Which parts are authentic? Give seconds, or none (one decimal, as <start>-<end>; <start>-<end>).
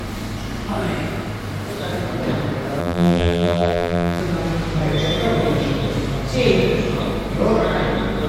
0.0-2.8; 4.2-8.3